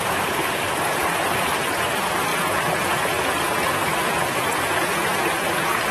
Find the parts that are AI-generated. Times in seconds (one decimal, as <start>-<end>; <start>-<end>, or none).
0.0-5.9